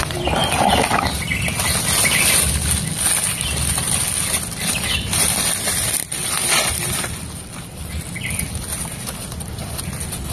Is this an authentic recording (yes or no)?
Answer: yes